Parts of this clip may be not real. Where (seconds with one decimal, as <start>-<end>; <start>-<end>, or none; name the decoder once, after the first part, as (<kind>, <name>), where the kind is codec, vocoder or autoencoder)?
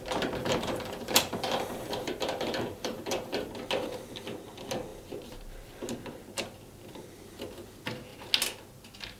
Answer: 0.4-3.5 (vocoder, BigVGAN v2)